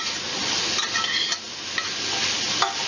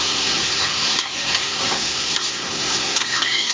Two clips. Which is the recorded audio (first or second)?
first